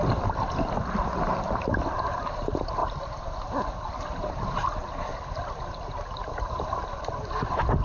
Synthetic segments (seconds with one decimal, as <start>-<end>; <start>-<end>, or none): 2.8-4.3; 5.1-5.7